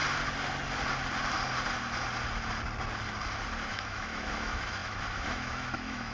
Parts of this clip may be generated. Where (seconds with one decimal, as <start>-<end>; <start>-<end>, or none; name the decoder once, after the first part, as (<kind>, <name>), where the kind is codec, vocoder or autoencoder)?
3.7-6.1 (autoencoder, DAC-VAE)